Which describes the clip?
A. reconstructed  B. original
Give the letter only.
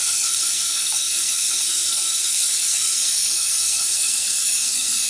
A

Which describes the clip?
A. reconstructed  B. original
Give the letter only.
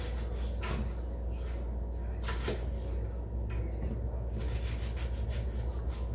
B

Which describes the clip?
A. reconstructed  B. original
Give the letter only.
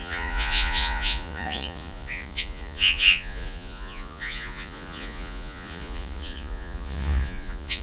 A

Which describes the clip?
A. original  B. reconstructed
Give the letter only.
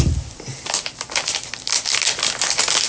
A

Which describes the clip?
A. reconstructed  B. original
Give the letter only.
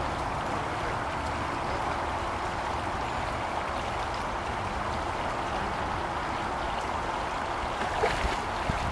B